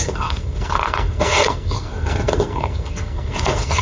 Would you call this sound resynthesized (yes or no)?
yes